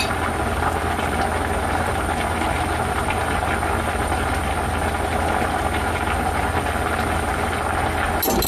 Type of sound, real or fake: real